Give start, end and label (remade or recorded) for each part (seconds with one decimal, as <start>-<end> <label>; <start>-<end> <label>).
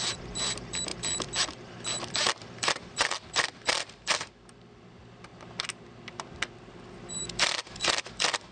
0.0-5.3 remade; 5.3-7.1 recorded; 7.1-8.5 remade